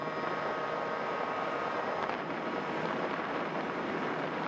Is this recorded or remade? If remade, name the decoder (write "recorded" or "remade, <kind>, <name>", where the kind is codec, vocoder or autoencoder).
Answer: remade, vocoder, BigVGAN v2